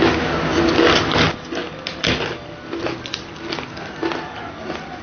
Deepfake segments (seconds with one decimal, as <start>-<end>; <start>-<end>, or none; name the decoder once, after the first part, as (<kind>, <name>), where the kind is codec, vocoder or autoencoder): none